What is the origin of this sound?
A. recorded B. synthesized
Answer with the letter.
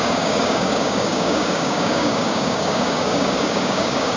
B